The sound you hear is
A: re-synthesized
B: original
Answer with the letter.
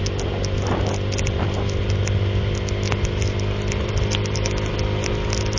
B